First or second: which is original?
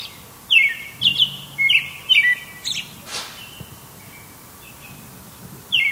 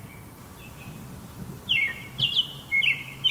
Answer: first